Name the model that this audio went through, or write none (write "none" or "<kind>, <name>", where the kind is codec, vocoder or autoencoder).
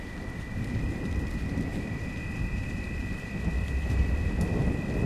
vocoder, BigVGAN v2